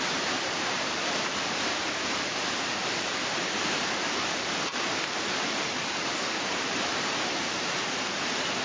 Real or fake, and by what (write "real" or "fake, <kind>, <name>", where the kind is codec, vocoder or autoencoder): fake, vocoder, BigVGAN v2